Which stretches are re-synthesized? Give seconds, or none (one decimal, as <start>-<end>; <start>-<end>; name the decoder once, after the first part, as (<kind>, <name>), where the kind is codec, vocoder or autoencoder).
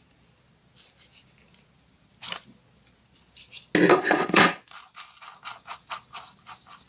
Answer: 3.9-4.6 (codec, HILCodec)